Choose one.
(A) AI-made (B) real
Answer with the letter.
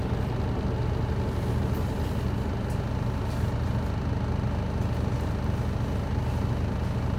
B